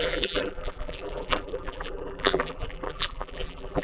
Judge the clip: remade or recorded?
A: remade